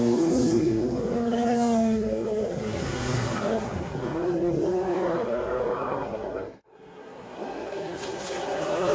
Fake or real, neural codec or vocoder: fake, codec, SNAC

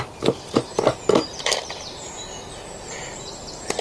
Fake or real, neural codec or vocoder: fake, vocoder, BigVGAN v2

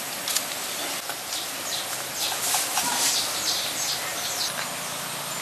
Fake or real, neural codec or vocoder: real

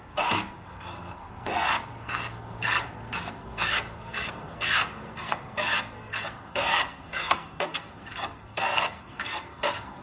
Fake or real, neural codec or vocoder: fake, codec, SNAC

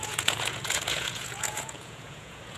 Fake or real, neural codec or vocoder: fake, vocoder, Vocos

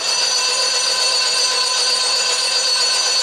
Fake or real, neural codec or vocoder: real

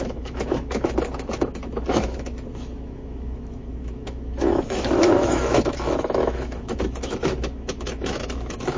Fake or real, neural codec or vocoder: fake, autoencoder, DAC-VAE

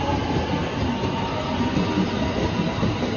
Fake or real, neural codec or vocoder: real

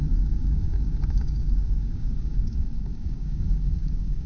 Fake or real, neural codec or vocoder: fake, codec, DAC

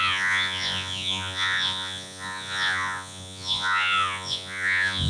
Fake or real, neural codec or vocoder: fake, vocoder, Vocos